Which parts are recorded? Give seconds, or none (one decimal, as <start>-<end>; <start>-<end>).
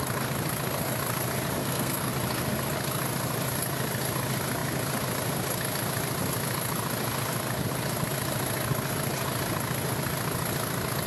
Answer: 0.0-1.6; 2.1-11.1